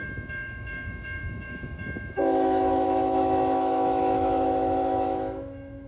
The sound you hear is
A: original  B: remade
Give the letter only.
B